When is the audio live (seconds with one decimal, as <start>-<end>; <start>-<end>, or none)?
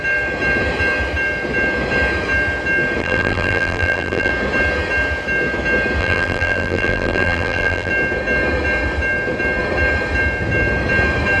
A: 0.0-3.0; 4.3-6.0; 7.9-11.4